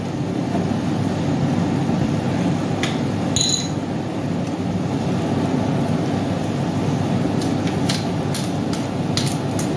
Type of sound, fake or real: real